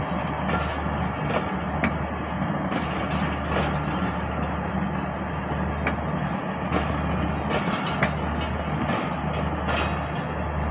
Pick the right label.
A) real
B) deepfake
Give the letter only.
A